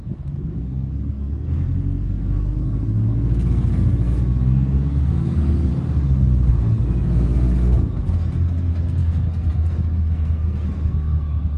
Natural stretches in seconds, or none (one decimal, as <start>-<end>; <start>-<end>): 5.7-6.5